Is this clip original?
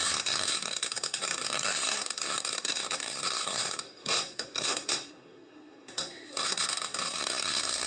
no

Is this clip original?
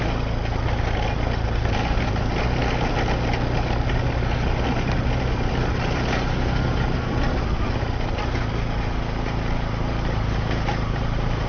yes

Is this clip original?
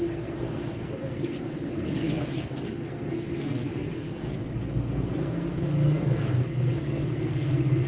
no